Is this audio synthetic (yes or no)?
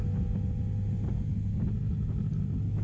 no